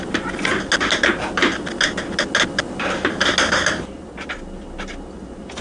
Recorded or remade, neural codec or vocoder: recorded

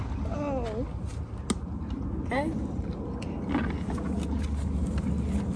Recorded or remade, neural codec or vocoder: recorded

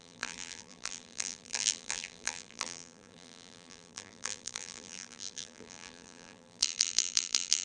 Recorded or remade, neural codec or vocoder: remade, vocoder, BigVGAN v2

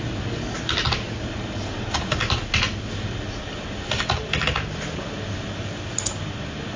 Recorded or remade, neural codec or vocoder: recorded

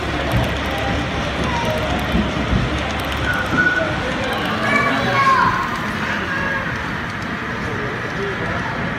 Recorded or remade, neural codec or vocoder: recorded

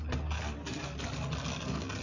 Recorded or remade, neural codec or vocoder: recorded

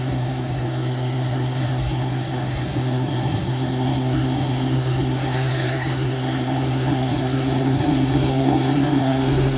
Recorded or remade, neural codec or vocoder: remade, codec, SNAC